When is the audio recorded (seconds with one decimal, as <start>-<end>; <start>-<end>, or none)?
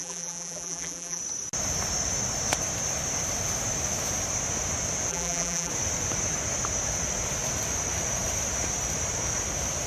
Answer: 1.2-5.1; 5.7-9.9